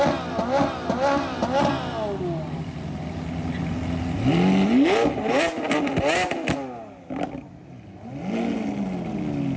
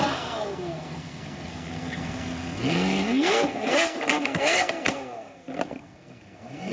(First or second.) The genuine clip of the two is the first